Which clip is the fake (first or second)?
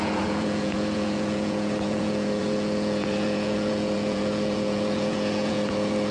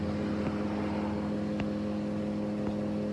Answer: first